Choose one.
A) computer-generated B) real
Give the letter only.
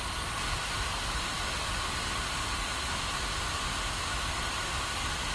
B